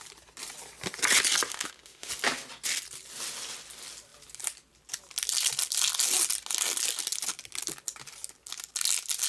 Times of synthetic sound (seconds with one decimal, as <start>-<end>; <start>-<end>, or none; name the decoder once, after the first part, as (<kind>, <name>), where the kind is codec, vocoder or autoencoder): 1.5-2.1 (autoencoder, DAC-VAE)